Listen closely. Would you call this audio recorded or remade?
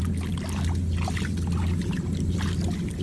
recorded